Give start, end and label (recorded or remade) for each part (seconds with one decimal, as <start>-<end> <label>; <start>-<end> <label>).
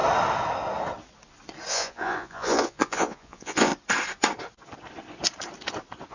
0.0-1.7 recorded; 1.7-3.7 remade; 3.7-6.1 recorded